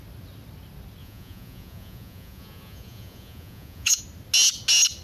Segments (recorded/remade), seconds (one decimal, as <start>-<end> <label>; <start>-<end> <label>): 0.0-1.0 recorded; 1.0-4.0 remade; 4.0-5.0 recorded